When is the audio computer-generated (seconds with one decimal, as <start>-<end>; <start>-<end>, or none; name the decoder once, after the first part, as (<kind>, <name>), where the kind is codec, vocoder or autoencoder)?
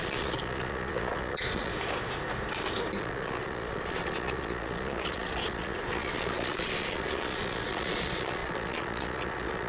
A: 0.0-1.7 (vocoder, Vocos); 3.0-9.7